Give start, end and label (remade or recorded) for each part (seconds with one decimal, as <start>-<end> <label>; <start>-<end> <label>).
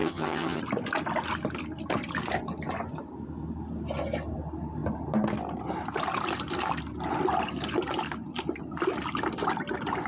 0.0-0.6 remade; 0.6-10.1 recorded